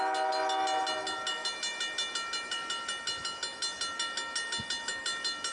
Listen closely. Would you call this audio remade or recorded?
recorded